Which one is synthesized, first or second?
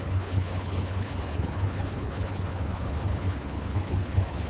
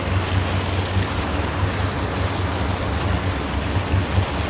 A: first